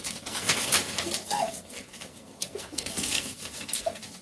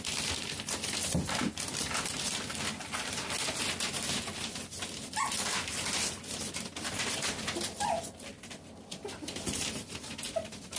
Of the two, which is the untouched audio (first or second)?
second